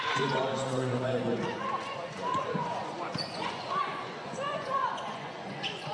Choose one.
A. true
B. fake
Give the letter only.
B